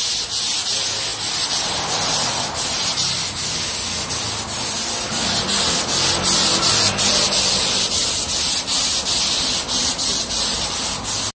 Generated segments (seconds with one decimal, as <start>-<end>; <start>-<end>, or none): none